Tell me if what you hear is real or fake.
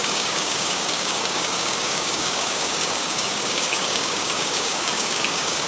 fake